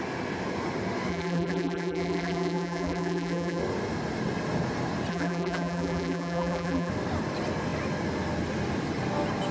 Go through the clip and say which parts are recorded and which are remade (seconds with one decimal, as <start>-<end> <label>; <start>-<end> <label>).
0.0-1.1 recorded; 1.1-3.6 remade; 3.6-5.1 recorded; 5.1-6.9 remade; 6.9-9.5 recorded